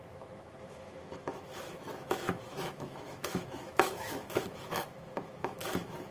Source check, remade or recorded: remade